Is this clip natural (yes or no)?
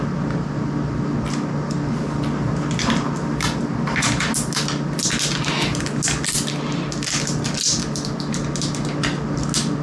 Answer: yes